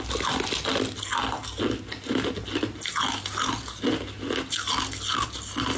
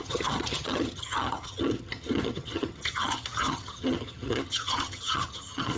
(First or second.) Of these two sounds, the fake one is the second